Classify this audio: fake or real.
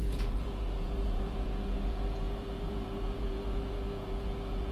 fake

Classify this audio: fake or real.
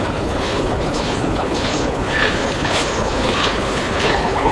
fake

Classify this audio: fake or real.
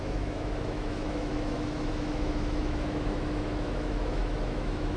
fake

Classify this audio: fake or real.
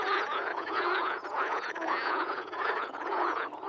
fake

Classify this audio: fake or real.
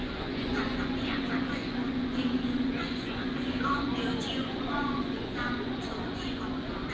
fake